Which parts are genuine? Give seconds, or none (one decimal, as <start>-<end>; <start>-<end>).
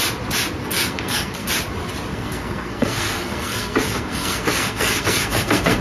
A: 0.0-0.6; 1.5-2.1